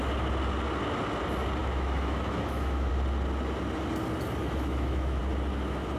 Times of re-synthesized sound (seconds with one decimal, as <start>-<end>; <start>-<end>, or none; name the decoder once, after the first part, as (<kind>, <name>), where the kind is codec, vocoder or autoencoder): 1.6-2.9 (autoencoder, DAC-VAE); 4.4-5.2